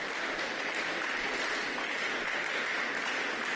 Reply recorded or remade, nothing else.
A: recorded